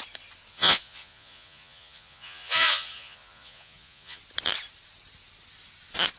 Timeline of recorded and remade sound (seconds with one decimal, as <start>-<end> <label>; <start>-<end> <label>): 0.0-0.5 recorded; 0.5-4.2 remade; 4.2-6.2 recorded